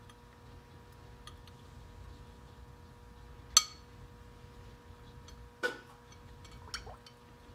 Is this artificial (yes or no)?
no